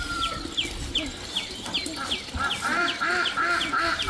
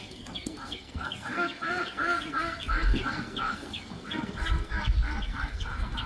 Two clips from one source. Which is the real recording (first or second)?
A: first